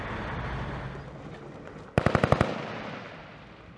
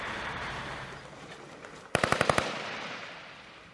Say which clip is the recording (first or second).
first